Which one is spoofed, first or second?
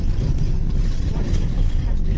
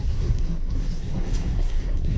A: second